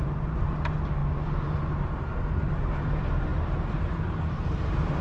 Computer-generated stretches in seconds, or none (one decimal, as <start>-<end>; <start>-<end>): 0.0-5.0